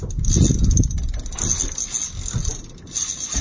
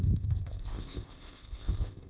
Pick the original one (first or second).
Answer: first